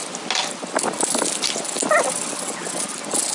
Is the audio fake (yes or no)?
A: no